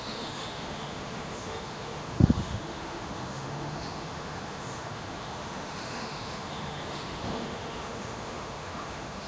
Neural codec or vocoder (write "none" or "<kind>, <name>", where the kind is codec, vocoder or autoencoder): autoencoder, DAC-VAE